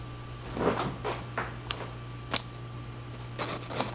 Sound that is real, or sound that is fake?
real